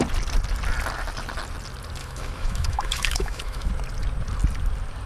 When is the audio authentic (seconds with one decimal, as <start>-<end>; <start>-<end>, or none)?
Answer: 0.0-2.0; 3.7-5.1